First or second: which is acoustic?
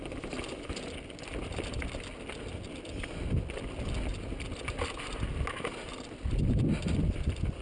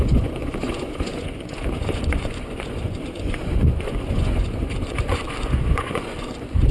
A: first